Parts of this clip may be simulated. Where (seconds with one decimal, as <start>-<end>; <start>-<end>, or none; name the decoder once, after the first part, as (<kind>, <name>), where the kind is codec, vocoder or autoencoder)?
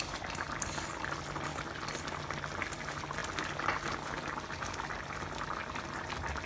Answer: 1.5-2.0 (vocoder, BigVGAN v2)